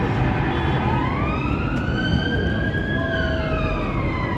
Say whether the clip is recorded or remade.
recorded